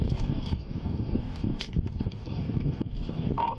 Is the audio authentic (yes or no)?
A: no